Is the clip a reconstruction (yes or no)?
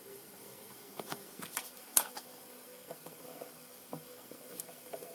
yes